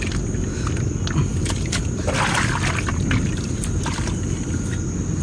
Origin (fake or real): real